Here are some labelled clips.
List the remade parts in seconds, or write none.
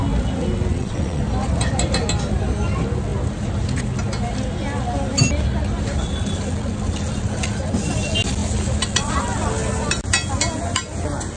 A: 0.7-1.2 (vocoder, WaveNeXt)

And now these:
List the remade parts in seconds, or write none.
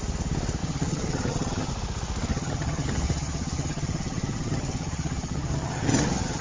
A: 0.6-1.7 (vocoder, HiFi-GAN); 2.3-6.4